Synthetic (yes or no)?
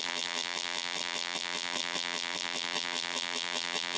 yes